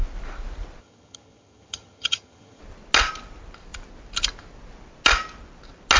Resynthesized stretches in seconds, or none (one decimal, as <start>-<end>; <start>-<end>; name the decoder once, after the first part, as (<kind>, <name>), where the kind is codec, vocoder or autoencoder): 0.8-2.6 (vocoder, HiFi-GAN)